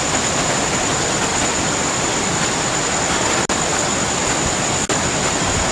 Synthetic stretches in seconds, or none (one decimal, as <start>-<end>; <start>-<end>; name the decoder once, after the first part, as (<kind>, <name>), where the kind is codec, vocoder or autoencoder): none